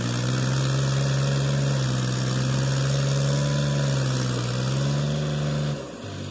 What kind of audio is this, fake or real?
real